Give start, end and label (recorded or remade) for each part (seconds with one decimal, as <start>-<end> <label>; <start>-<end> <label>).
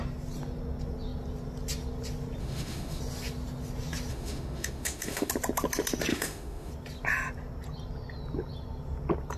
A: 0.0-2.4 recorded; 2.4-3.0 remade; 3.0-4.1 recorded; 4.1-5.3 remade; 5.3-6.1 recorded; 6.1-6.7 remade; 6.7-9.4 recorded